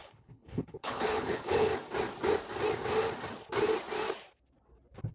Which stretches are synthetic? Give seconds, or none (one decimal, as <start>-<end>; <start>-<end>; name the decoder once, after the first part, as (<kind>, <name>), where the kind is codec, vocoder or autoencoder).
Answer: 0.0-1.7 (codec, HILCodec)